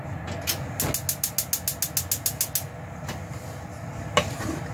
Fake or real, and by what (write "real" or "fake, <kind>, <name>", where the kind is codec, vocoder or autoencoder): real